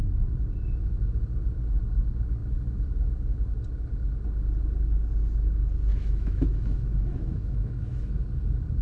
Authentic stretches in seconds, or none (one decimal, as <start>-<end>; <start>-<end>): 0.0-5.9; 8.2-8.8